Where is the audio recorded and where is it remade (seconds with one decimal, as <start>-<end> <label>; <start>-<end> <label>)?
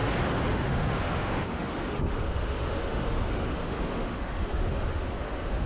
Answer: 0.0-0.5 recorded; 0.5-5.7 remade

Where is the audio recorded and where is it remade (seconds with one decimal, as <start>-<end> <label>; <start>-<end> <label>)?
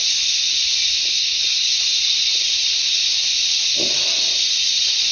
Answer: 0.0-1.2 recorded; 1.2-1.8 remade; 1.8-5.1 recorded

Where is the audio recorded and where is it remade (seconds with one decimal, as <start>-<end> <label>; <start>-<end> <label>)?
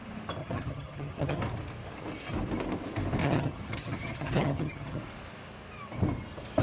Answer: 0.0-0.4 recorded; 0.4-1.4 remade; 1.4-3.2 recorded; 3.2-5.0 remade; 5.0-6.6 recorded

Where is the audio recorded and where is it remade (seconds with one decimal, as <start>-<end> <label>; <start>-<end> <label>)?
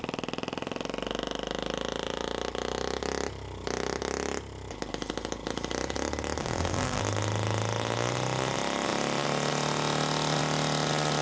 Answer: 0.0-6.4 recorded; 6.4-7.0 remade; 7.0-11.2 recorded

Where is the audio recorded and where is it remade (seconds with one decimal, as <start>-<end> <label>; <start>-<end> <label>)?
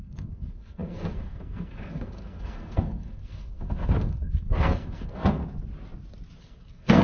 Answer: 0.0-5.4 remade; 5.4-6.4 recorded; 6.4-7.0 remade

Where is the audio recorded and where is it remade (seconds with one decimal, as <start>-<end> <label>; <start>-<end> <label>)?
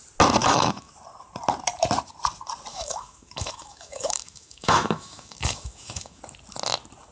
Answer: 0.0-0.4 recorded; 0.4-0.9 remade; 0.9-2.7 recorded; 2.7-6.2 remade; 6.2-7.1 recorded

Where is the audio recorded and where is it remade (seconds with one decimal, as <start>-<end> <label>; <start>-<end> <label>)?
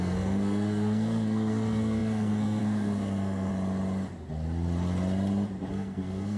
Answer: 0.0-3.5 remade; 3.5-5.7 recorded; 5.7-6.4 remade